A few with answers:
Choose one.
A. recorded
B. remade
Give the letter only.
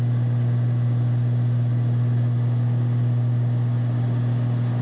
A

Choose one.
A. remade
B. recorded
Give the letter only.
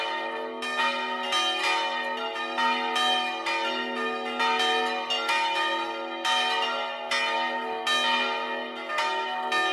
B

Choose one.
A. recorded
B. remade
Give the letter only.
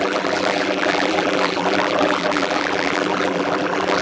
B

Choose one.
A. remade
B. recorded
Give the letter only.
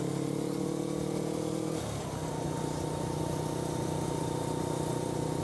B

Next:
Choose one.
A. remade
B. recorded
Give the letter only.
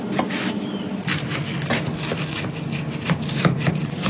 A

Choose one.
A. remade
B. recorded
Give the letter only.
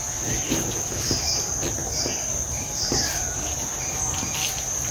B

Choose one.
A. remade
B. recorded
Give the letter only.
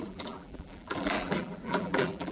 A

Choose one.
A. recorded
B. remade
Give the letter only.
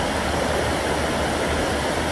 A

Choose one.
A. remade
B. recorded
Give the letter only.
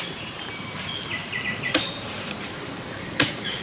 A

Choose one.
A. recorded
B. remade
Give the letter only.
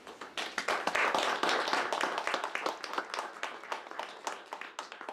A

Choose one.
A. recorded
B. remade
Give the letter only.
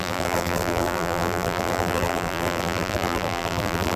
B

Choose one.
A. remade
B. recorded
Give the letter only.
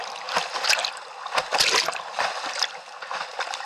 B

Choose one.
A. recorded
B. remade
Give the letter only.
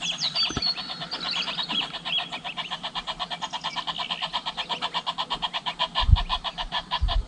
B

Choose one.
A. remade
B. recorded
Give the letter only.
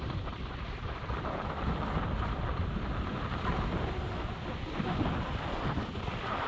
A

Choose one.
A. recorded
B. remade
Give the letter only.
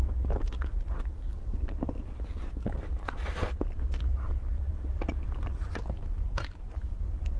B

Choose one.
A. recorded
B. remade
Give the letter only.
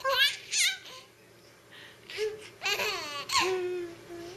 A